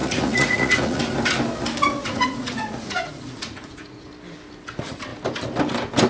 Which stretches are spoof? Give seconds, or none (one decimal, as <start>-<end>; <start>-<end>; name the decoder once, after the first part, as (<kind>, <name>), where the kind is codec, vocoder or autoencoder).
0.0-1.0 (vocoder, Vocos); 2.0-4.1

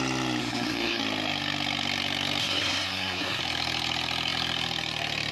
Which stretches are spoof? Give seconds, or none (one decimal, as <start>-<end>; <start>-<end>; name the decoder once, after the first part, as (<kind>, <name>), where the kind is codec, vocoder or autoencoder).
0.4-1.0 (codec, SNAC); 2.4-3.4

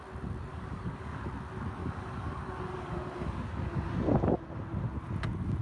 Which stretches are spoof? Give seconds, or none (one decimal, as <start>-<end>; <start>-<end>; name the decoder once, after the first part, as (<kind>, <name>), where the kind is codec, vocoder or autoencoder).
0.5-1.3 (codec, DAC); 1.8-3.9

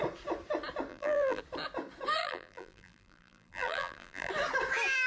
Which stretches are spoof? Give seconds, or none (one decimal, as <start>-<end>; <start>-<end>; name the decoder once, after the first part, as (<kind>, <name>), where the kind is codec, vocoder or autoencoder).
0.9-1.4 (vocoder, BigVGAN v2); 2.2-4.3